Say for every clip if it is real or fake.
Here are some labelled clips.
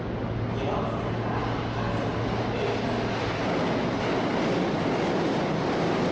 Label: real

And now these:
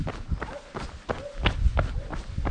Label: real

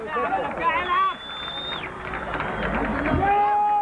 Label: real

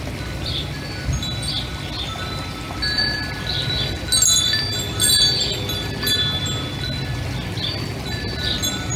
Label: real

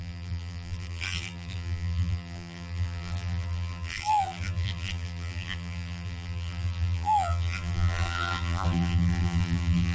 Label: fake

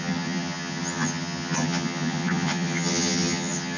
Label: fake